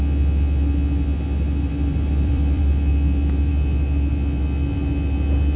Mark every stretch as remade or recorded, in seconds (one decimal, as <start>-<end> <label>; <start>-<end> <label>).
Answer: 0.0-1.7 recorded; 1.7-2.6 remade; 2.6-5.6 recorded